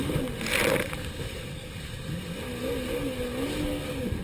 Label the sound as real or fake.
real